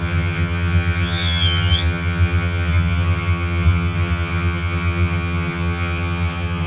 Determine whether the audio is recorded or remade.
remade